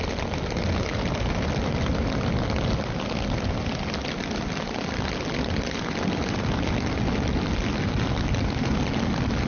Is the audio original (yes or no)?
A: yes